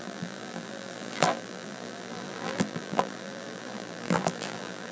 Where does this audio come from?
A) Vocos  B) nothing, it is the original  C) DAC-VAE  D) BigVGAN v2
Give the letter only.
D